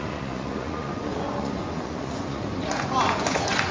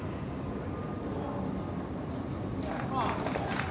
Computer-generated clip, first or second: first